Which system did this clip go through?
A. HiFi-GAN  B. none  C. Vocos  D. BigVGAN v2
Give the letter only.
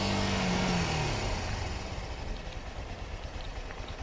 B